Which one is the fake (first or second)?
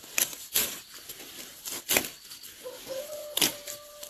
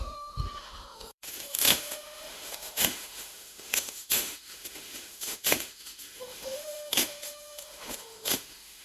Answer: second